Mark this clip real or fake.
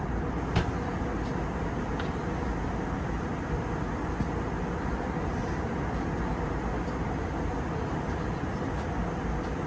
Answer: real